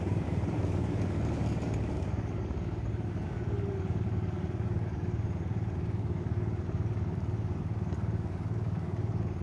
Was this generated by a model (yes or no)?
yes